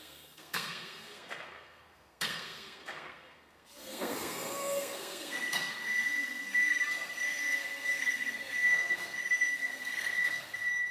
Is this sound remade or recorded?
remade